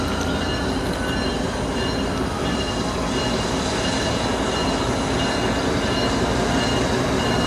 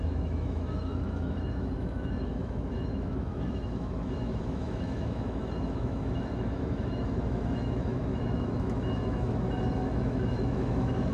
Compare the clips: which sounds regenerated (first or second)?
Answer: second